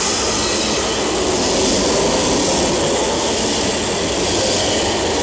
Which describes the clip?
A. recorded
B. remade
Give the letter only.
A